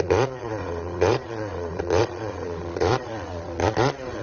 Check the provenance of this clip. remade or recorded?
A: remade